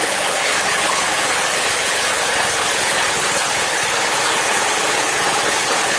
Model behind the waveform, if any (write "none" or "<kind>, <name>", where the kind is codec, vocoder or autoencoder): codec, HILCodec